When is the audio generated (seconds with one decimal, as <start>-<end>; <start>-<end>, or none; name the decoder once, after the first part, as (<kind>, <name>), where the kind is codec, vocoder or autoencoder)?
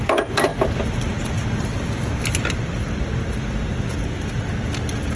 none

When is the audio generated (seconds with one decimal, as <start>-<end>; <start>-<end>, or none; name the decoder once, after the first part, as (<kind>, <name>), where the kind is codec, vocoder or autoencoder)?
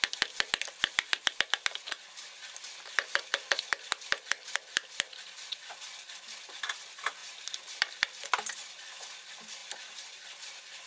none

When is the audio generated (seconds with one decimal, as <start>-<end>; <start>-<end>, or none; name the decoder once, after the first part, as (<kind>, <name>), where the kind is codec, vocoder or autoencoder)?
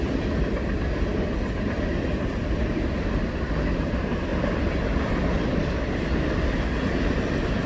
none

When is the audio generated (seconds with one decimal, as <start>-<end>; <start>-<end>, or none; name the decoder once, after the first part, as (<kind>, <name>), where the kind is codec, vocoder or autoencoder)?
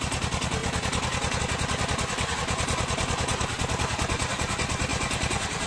4.9-5.7 (vocoder, BigVGAN v2)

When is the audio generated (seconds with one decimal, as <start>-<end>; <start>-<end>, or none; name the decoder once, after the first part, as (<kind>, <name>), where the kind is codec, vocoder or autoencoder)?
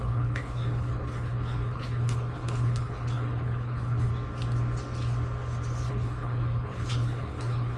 0.0-4.1 (codec, HILCodec); 5.9-7.8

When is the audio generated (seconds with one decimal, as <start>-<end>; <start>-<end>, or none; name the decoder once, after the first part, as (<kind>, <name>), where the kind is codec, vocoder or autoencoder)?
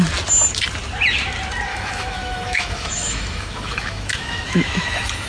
1.7-5.3 (autoencoder, DAC-VAE)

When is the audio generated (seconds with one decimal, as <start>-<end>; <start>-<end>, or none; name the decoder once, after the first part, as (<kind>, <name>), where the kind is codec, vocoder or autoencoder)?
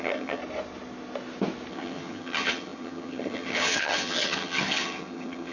0.0-0.4 (vocoder, HiFi-GAN); 1.7-5.5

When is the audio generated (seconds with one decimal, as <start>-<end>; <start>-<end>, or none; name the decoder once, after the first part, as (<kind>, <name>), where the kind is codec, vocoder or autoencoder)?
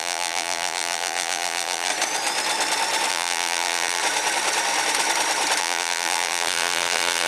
0.0-1.9 (vocoder, BigVGAN v2); 3.1-4.0; 5.6-7.3